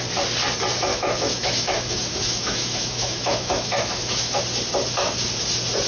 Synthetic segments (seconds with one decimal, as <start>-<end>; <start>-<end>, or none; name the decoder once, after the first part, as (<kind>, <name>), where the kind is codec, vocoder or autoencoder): 0.9-4.4 (autoencoder, DAC-VAE)